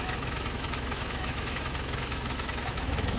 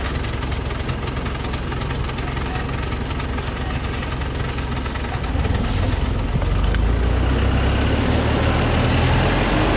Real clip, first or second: second